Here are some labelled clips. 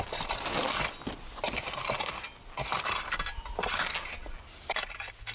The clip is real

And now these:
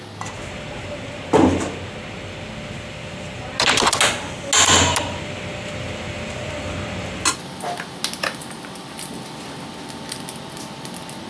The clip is real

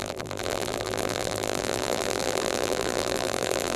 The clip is fake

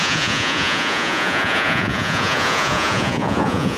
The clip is fake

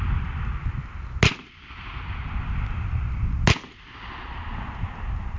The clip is real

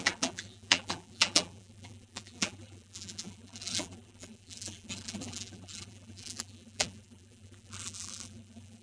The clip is fake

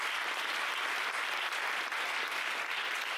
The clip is real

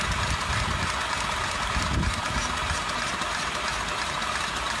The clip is real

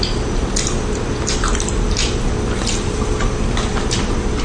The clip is real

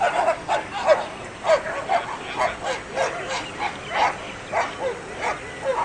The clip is real